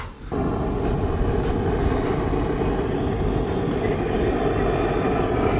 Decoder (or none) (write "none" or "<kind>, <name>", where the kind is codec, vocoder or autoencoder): none